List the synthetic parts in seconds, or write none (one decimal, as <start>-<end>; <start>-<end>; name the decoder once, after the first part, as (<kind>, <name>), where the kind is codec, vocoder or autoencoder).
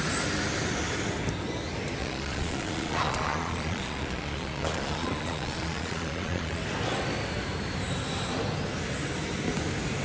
2.0-6.6 (vocoder, Vocos)